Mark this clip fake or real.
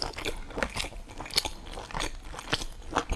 real